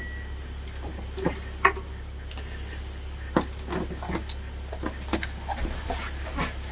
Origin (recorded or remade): recorded